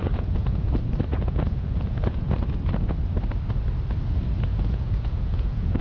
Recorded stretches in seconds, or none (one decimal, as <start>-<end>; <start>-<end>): 0.7-1.1; 2.3-4.5